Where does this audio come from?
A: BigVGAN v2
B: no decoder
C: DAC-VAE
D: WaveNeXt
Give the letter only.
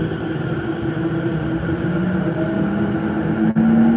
B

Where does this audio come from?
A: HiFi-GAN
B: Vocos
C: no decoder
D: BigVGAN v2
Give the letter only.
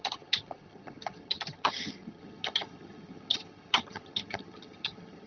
A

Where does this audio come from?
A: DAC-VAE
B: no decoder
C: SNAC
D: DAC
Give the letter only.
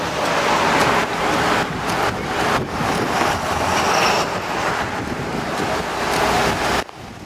B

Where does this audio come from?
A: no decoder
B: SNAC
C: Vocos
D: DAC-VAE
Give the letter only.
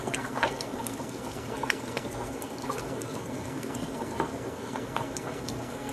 B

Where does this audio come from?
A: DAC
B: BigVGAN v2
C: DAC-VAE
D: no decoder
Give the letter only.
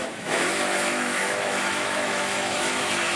C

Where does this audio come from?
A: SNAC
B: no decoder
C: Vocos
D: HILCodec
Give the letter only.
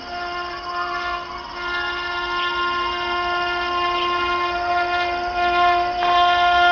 B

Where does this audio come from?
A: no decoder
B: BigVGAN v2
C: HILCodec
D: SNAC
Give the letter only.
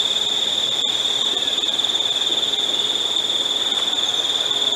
A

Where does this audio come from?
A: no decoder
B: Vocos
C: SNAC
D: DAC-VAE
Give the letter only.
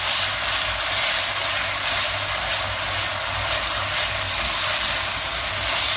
A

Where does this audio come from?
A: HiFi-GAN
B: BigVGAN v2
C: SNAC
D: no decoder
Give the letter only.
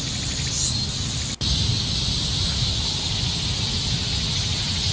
D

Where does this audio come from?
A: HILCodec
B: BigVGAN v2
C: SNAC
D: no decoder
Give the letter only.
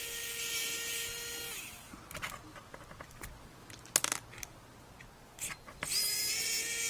D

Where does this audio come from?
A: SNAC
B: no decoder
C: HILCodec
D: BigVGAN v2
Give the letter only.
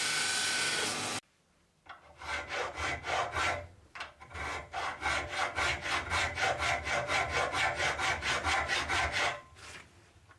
B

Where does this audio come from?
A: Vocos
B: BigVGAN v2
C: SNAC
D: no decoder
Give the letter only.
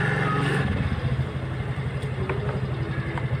D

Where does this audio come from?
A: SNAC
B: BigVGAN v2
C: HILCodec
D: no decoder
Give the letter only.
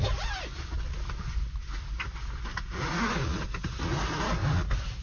D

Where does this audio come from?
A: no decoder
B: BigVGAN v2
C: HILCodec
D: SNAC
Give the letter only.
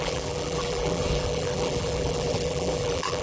B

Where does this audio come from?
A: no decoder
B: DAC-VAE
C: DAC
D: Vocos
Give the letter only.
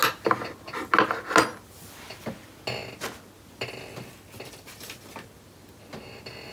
A